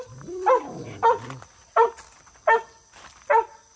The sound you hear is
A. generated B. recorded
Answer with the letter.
B